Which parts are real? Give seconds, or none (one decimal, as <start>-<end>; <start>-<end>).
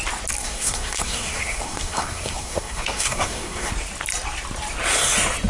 0.0-0.4; 3.7-5.5